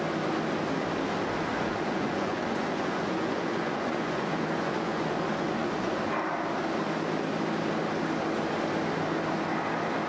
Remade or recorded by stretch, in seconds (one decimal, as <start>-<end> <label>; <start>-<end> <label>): 0.0-1.5 recorded; 1.5-5.9 remade; 5.9-10.1 recorded